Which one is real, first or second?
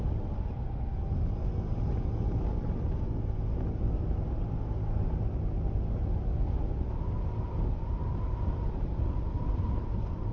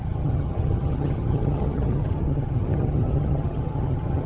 first